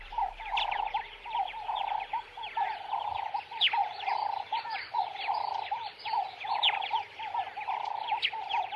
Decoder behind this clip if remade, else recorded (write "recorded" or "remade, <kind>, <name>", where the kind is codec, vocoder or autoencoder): remade, vocoder, BigVGAN v2